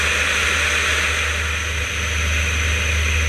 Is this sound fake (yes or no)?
no